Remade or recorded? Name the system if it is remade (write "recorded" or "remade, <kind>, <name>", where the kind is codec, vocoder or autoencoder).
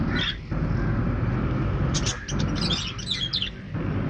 recorded